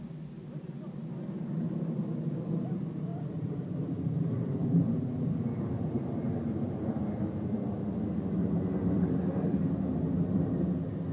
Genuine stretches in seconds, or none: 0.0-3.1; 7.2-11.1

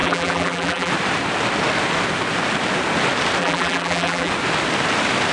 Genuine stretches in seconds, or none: 0.9-3.4; 4.3-5.3

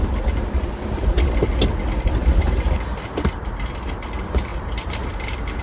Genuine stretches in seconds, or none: 0.0-3.4

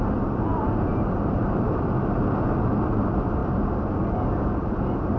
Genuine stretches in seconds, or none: 0.0-0.5; 1.9-3.4; 4.0-5.2

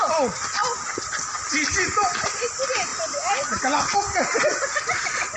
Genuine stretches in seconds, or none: 0.0-5.4

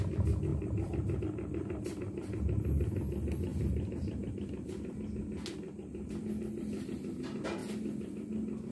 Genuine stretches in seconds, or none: 0.0-0.5; 1.2-3.5; 4.3-8.7

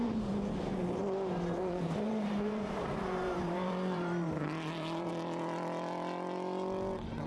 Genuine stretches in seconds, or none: 0.0-0.7; 5.1-7.3

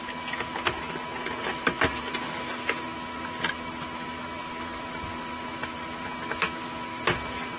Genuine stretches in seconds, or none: 0.0-7.6